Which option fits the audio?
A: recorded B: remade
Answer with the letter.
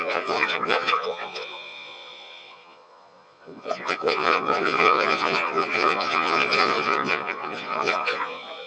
B